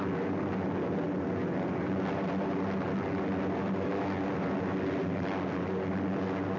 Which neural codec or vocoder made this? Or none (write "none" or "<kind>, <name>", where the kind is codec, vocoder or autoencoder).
none